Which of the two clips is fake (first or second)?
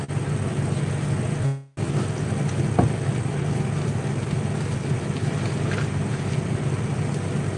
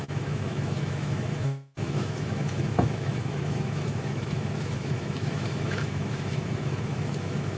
second